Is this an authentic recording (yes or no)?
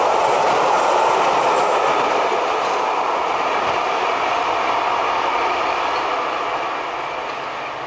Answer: yes